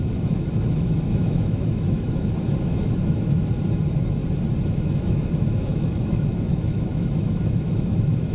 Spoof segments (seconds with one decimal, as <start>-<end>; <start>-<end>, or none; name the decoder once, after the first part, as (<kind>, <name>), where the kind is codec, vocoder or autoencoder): 0.0-4.2 (autoencoder, DAC-VAE); 4.7-8.3